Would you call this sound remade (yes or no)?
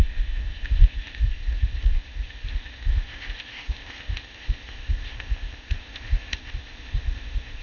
yes